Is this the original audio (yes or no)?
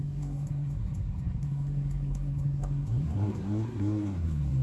no